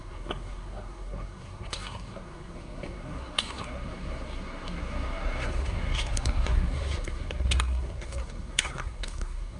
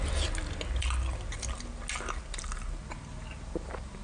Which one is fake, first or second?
first